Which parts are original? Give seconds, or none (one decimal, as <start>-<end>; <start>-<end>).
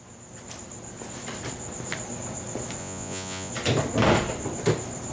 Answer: 0.0-2.8; 3.5-5.1